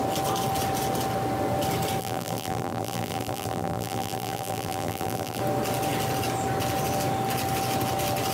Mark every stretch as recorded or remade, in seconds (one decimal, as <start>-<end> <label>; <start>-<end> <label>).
0.0-2.0 recorded; 2.0-5.4 remade; 5.4-8.3 recorded